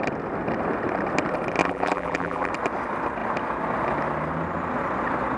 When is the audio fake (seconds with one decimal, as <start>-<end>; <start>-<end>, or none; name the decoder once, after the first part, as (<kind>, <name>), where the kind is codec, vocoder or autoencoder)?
1.6-2.5 (vocoder, BigVGAN v2)